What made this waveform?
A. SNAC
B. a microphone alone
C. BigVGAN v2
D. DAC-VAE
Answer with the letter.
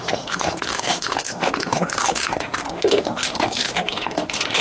D